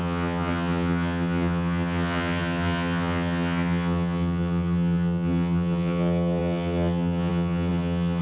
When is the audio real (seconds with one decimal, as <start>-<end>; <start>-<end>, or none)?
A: none